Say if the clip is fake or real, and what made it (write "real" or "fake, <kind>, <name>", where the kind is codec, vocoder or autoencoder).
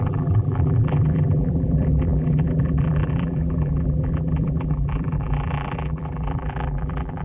fake, vocoder, BigVGAN v2